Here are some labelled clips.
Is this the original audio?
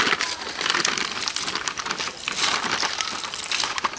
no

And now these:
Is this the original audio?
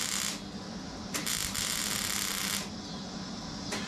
yes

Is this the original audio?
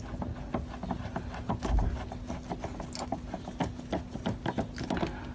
yes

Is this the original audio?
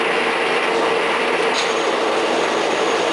no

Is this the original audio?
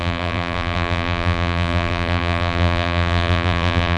no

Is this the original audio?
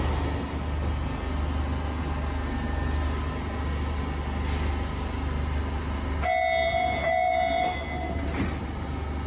yes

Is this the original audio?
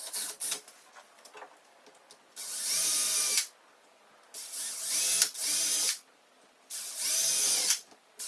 yes